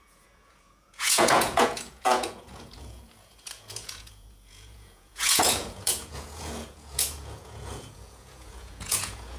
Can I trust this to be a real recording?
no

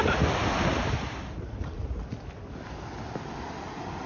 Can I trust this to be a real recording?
yes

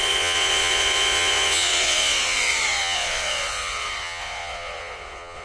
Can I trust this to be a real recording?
no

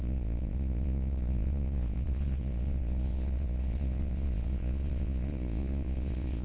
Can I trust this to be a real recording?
no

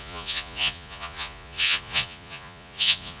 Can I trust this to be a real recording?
no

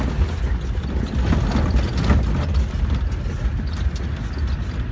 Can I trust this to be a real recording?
yes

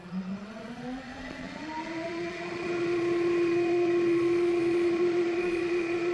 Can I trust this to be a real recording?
no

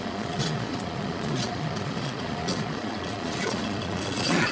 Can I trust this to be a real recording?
no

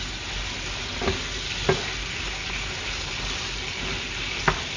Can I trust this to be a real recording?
yes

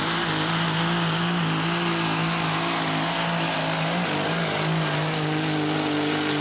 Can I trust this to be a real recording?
yes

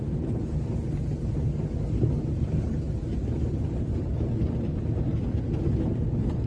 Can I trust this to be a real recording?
yes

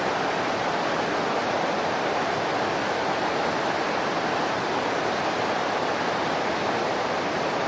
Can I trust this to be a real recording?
yes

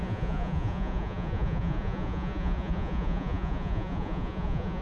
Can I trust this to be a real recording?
no